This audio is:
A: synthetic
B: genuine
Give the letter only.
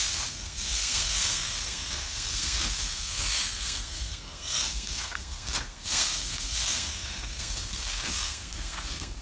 A